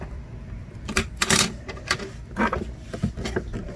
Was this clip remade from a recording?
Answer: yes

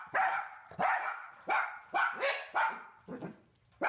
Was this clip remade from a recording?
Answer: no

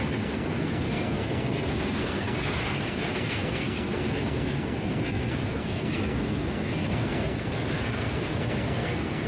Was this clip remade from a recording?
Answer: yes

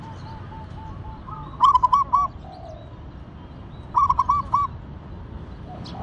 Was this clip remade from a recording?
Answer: no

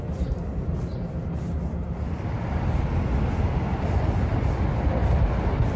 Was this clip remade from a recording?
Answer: no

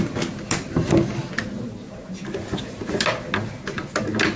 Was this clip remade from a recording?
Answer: no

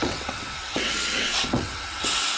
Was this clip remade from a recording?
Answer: yes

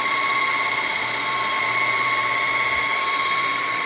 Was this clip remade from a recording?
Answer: yes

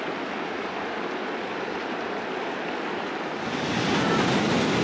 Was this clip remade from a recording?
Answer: no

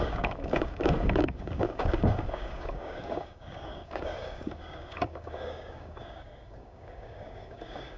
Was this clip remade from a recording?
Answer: yes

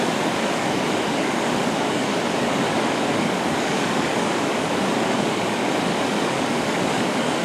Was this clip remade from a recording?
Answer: yes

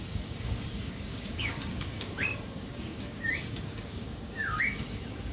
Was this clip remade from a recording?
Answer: yes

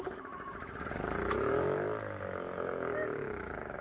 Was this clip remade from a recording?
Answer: yes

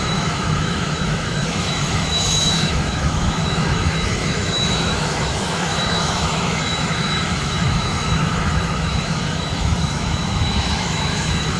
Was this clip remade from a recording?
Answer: yes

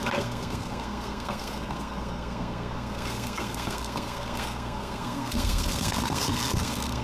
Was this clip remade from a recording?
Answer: yes